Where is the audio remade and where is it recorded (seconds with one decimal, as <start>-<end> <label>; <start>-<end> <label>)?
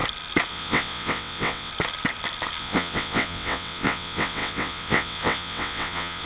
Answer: 0.0-0.5 recorded; 0.5-1.7 remade; 1.7-2.6 recorded; 2.6-6.3 remade